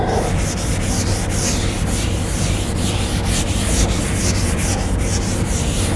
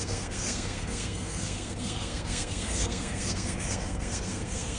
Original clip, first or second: first